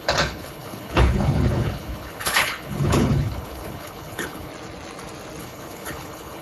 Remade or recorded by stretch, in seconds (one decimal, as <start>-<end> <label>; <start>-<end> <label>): 0.0-4.5 remade; 4.5-5.4 recorded; 5.4-6.4 remade